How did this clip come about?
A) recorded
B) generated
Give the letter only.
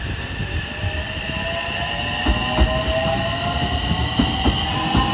A